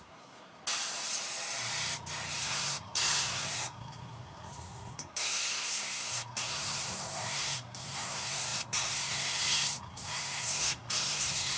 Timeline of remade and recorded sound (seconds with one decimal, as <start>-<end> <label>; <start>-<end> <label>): 0.0-0.6 remade; 0.6-2.4 recorded; 2.4-11.6 remade